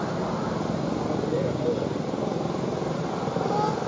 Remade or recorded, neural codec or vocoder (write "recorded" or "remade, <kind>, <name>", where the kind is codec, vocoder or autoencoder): recorded